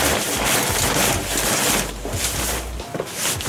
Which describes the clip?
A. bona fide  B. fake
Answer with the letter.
A